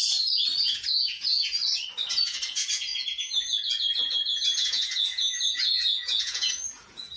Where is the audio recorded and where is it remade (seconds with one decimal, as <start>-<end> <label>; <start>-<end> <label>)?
0.0-0.6 recorded; 0.6-1.6 remade; 1.6-2.1 recorded; 2.1-7.2 remade